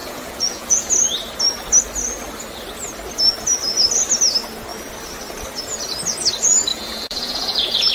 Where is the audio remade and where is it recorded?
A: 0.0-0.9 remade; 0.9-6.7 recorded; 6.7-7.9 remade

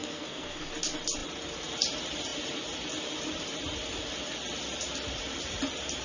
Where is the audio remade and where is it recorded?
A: 0.0-0.7 remade; 0.7-6.0 recorded

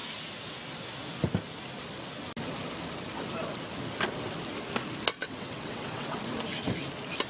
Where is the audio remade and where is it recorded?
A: 0.0-5.2 recorded; 5.2-6.2 remade; 6.2-7.3 recorded

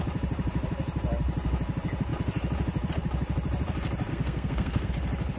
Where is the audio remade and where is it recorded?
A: 0.0-4.1 recorded; 4.1-4.9 remade; 4.9-5.4 recorded

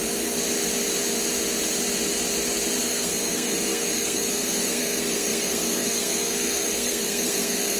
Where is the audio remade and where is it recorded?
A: 0.0-2.8 recorded; 2.8-7.8 remade